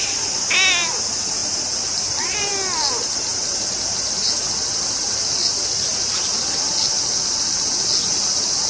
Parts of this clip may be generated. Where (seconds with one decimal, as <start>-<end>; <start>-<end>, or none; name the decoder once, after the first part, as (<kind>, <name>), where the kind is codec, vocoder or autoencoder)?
1.4-2.5 (vocoder, BigVGAN v2); 5.9-6.4